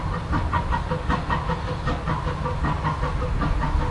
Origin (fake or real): real